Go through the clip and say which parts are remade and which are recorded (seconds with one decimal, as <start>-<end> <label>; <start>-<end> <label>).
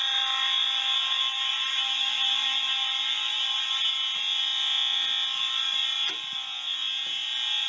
0.0-7.7 recorded